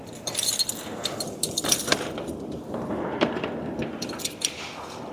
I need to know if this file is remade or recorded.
remade